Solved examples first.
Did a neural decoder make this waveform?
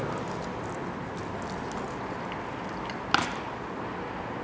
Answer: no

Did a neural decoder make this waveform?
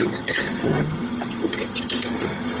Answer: yes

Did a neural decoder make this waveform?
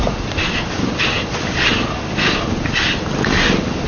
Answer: no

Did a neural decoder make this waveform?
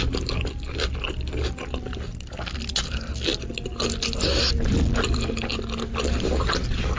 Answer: no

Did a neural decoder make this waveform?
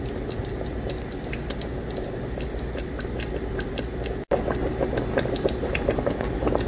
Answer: no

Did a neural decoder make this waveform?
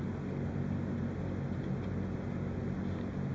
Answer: no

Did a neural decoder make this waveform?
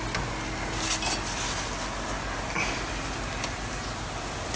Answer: no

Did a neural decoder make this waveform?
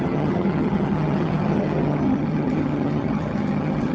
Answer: yes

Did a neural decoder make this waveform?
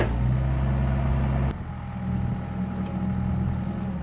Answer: no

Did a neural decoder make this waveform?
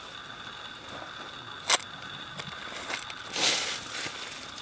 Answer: no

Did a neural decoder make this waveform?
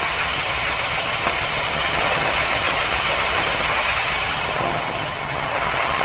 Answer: yes